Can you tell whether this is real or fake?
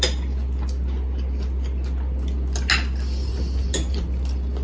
real